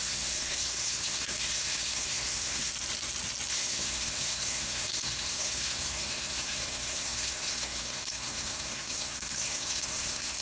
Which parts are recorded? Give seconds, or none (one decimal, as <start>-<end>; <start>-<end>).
2.7-3.5